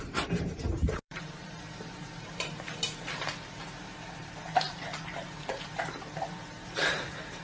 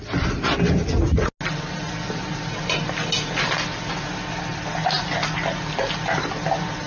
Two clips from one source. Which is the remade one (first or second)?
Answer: first